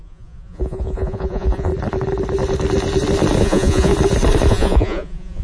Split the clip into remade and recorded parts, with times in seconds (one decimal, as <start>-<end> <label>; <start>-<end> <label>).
0.0-1.7 remade; 1.7-3.4 recorded; 3.4-3.9 remade; 3.9-4.5 recorded; 4.5-5.4 remade